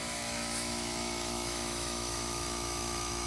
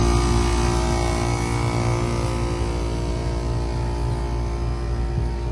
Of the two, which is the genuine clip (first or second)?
second